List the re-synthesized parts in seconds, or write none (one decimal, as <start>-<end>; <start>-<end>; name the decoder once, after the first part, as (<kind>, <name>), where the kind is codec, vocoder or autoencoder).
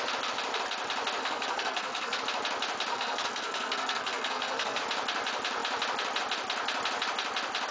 1.2-2.2 (codec, SNAC); 2.9-4.8